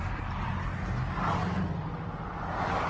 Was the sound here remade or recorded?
recorded